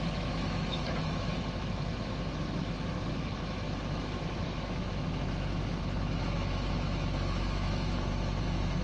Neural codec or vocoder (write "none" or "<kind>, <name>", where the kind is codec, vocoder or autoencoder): autoencoder, DAC-VAE